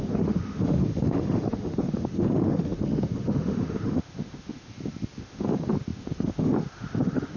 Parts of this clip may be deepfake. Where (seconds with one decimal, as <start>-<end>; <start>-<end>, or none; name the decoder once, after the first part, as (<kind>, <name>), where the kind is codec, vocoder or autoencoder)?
0.0-4.7 (autoencoder, DAC-VAE); 5.2-7.4